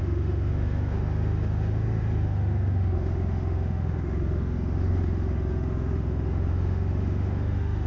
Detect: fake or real fake